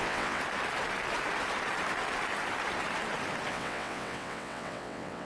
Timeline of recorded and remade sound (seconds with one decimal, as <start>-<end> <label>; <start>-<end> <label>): 0.0-0.4 remade; 0.4-3.5 recorded; 3.5-5.2 remade